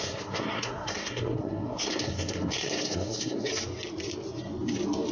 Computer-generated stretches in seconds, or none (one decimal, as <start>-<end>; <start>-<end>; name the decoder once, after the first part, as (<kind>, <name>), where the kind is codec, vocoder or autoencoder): 0.0-3.5 (codec, SNAC)